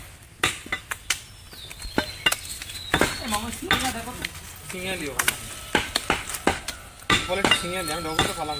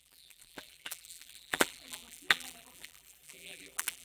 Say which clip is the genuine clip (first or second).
first